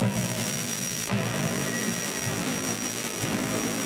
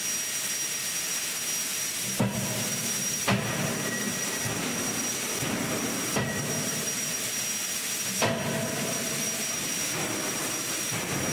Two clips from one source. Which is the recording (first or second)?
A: second